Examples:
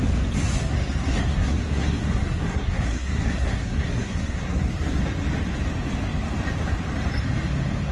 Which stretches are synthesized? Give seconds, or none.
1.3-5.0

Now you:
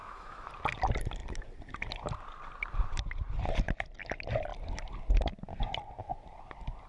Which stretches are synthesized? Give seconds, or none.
0.0-0.5

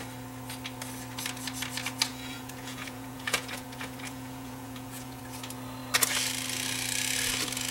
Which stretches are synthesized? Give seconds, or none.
2.1-5.2

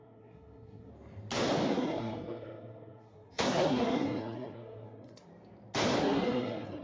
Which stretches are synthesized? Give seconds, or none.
0.0-0.9; 1.7-5.3; 6.0-6.8

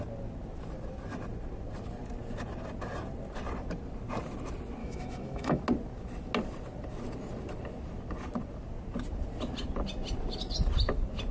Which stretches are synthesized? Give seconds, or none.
4.8-5.6

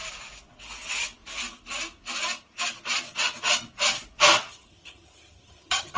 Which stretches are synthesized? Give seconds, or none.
4.5-6.0

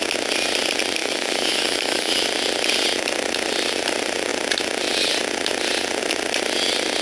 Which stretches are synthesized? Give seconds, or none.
1.0-2.1

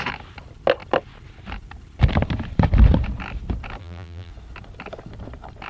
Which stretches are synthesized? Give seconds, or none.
3.8-4.3